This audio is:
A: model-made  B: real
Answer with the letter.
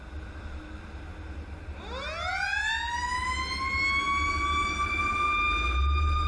B